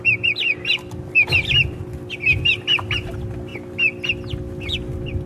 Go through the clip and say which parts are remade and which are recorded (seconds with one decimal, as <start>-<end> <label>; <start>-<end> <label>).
0.0-5.3 recorded